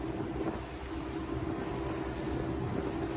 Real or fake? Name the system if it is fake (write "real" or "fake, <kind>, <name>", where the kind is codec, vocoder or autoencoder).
real